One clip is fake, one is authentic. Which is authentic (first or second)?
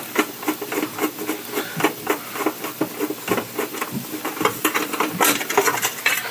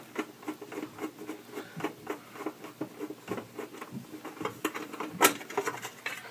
second